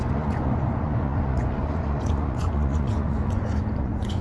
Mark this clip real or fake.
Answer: fake